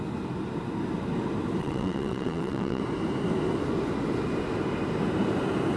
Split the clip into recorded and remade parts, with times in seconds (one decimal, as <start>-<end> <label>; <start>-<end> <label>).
0.0-1.6 recorded; 1.6-2.8 remade; 2.8-5.8 recorded